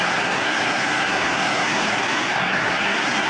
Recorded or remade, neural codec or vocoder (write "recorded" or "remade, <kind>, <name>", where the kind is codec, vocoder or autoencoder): remade, codec, SNAC